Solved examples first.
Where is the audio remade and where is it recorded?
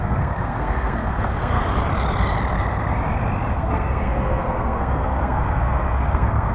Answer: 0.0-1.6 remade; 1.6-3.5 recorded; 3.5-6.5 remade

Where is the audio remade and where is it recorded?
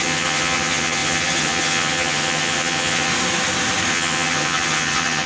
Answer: 0.0-3.1 remade; 3.1-3.9 recorded; 3.9-5.3 remade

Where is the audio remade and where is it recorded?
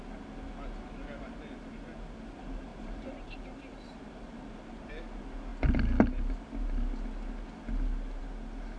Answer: 0.0-2.7 recorded; 2.7-4.9 remade; 4.9-8.8 recorded